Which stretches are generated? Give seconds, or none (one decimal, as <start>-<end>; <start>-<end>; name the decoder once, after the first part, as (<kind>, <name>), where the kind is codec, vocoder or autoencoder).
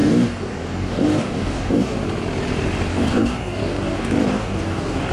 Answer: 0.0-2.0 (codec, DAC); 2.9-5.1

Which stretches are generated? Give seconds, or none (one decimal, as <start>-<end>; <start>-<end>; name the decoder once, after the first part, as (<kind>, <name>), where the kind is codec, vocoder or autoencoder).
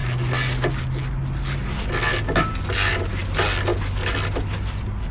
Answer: none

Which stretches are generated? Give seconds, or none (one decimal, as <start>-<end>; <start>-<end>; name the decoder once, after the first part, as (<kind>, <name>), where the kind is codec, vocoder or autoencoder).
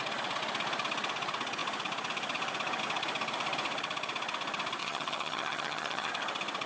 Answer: 4.8-6.1 (vocoder, HiFi-GAN)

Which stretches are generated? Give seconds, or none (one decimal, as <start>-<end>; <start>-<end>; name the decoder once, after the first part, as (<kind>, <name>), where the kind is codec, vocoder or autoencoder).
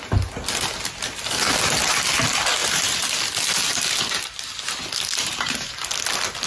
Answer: none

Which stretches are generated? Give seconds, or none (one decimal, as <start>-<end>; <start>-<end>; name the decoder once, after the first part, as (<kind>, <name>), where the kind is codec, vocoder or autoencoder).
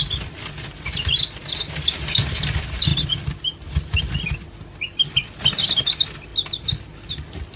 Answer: none